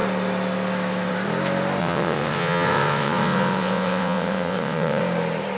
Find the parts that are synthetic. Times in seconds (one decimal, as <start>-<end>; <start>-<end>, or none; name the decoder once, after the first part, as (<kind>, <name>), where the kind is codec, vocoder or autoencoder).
1.8-5.0 (vocoder, WaveNeXt)